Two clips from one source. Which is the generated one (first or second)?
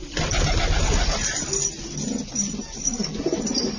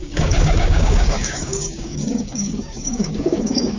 second